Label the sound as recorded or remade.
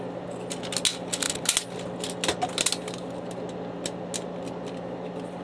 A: recorded